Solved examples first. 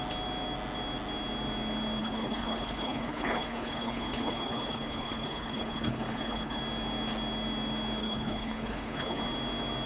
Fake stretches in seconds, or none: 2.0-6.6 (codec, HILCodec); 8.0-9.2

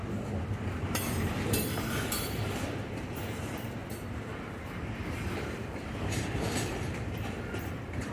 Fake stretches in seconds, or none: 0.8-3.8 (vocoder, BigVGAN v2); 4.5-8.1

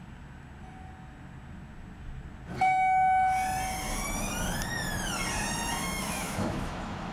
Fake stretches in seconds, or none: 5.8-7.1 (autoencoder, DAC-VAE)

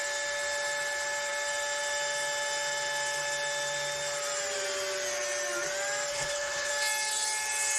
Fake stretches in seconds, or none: 6.1-6.7 (codec, HILCodec)

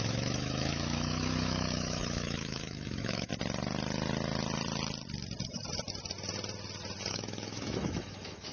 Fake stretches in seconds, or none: 0.0-3.3 (autoencoder, DAC-VAE); 7.1-8.5

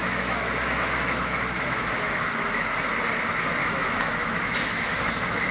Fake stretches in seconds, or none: 0.0-2.7 (autoencoder, DAC-VAE); 3.6-5.5

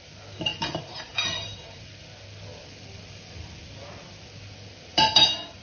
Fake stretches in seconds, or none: 0.5-1.8 (vocoder, BigVGAN v2); 4.9-5.6